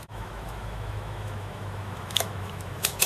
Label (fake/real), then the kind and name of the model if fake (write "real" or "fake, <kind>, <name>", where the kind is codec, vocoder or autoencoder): fake, autoencoder, DAC-VAE